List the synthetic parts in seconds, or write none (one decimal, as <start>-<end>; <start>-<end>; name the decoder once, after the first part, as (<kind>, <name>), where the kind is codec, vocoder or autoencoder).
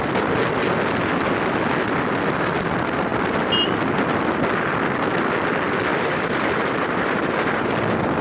5.9-7.7 (vocoder, BigVGAN v2)